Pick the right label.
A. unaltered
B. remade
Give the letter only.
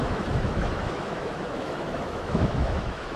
B